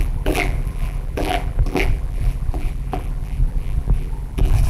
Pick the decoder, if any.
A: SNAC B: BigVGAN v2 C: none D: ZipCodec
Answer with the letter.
B